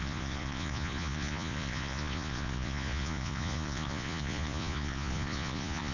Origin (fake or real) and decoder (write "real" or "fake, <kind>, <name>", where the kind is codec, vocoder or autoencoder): fake, vocoder, Vocos